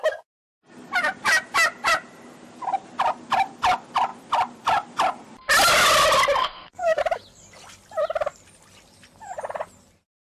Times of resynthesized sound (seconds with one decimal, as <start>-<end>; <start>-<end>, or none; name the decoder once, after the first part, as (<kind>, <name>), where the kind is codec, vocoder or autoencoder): 6.4-7.0 (codec, SNAC)